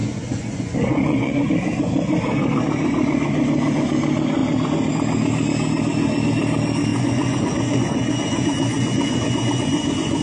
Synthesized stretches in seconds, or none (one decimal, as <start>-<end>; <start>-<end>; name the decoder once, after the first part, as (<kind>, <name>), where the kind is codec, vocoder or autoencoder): 0.0-1.5 (vocoder, Vocos); 6.9-10.2